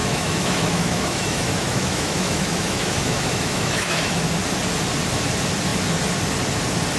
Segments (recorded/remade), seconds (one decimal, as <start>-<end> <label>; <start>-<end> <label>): 0.0-4.2 remade; 4.2-7.0 recorded